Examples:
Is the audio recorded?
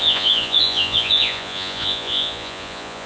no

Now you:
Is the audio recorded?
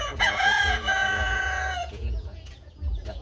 no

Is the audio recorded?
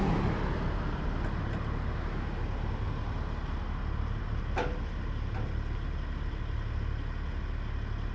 yes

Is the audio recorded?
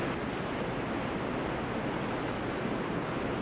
yes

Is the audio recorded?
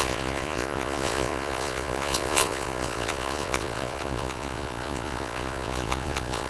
no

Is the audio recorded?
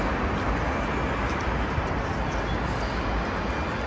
yes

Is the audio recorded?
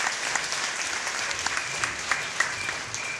yes